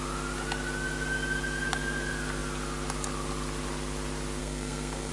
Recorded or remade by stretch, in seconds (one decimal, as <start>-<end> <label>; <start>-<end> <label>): 0.0-4.4 recorded; 4.4-5.1 remade